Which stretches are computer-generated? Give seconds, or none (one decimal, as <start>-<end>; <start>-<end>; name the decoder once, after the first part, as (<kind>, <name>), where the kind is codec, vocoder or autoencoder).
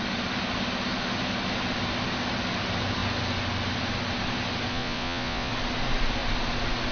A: 4.7-5.5 (vocoder, Vocos)